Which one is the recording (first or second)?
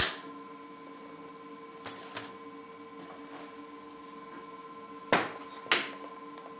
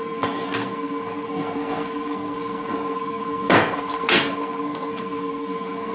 first